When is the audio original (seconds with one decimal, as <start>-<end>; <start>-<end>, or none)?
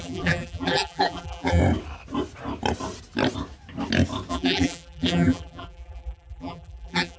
1.6-4.3